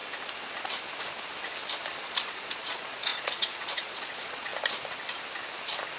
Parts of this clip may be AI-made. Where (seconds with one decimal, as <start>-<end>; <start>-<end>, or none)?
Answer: 2.0-4.5